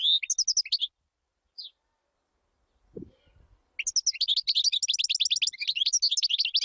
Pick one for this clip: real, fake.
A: real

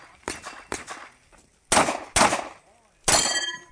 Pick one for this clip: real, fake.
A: real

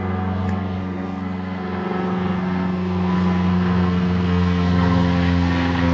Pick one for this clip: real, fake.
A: fake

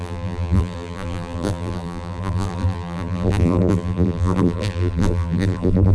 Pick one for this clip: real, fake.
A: fake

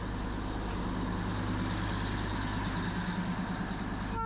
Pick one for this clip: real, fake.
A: real